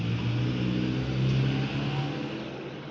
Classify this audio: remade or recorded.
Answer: recorded